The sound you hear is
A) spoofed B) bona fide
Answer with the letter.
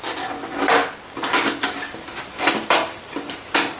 B